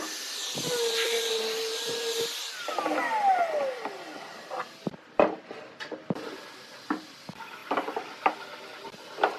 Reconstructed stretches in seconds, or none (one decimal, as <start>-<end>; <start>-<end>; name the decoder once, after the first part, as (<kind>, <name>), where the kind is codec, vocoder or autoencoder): none